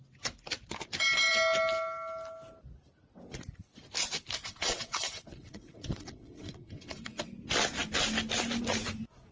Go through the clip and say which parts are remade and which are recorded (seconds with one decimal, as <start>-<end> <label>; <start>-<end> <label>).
0.0-4.4 recorded; 4.4-7.3 remade; 7.3-9.3 recorded